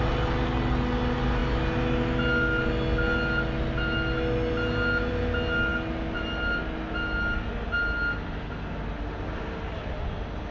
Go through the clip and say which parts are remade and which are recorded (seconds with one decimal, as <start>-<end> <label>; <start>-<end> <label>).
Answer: 0.0-10.5 recorded